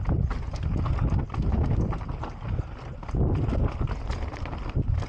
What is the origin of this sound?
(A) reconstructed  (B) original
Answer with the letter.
B